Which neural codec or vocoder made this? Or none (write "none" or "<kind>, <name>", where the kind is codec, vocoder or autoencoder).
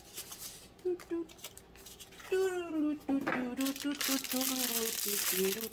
none